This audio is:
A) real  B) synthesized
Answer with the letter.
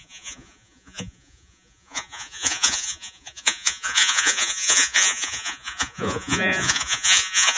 B